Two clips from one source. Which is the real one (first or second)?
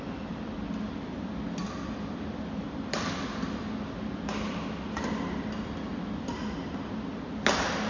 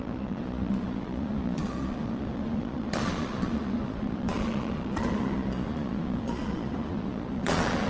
first